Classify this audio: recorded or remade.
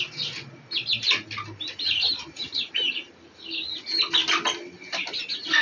recorded